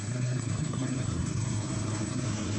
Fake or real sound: fake